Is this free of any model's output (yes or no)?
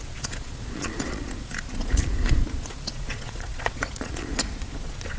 no